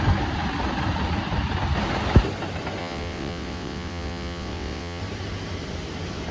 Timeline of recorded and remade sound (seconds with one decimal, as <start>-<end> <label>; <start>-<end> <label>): 0.0-2.8 recorded; 2.8-5.0 remade; 5.0-6.3 recorded